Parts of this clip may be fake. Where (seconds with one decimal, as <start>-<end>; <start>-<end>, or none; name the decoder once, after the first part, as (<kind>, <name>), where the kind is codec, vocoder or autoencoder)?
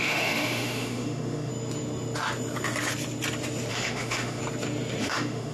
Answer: 0.0-1.5 (autoencoder, DAC-VAE); 3.7-4.4; 5.0-5.5